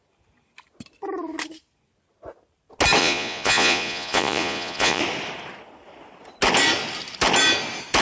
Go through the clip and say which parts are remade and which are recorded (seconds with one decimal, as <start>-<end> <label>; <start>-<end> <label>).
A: 0.0-3.0 recorded; 3.0-5.0 remade; 5.0-8.0 recorded

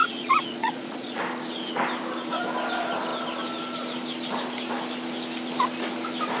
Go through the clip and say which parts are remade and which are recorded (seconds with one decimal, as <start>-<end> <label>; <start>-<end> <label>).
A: 0.0-1.2 remade; 1.2-6.4 recorded

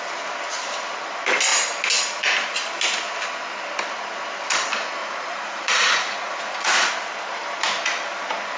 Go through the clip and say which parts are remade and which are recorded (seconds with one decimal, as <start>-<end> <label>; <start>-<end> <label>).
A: 0.0-5.0 recorded; 5.0-6.9 remade; 6.9-8.6 recorded

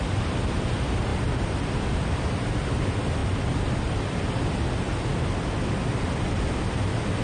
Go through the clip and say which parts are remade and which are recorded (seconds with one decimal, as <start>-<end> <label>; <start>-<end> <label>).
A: 0.0-7.2 recorded

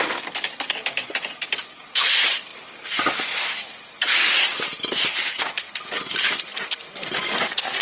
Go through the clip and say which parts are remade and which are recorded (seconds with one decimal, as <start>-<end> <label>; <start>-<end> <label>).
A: 0.0-7.8 recorded